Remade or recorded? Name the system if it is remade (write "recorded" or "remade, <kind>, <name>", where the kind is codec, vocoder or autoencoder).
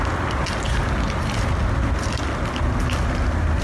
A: recorded